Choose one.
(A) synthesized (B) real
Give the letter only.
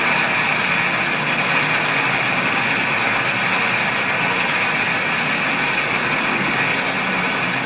B